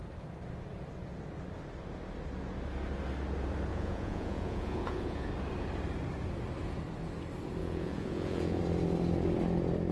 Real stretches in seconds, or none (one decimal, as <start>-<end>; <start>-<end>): 0.0-3.7; 5.3-7.6; 8.6-9.9